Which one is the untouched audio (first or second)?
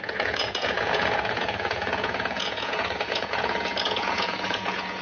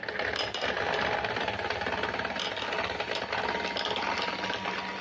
second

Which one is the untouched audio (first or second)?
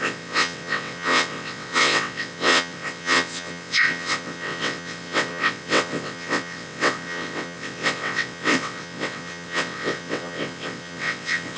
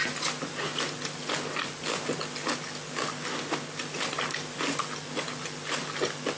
second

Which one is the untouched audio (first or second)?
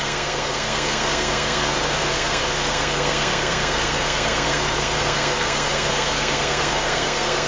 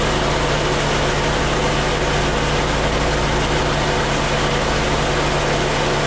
second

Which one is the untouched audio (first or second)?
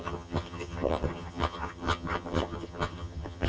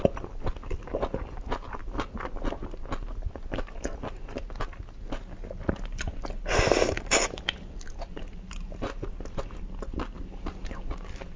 second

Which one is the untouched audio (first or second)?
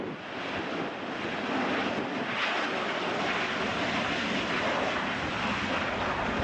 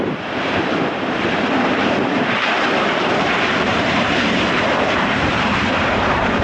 first